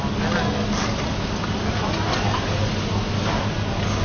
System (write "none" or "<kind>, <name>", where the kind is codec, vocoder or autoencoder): none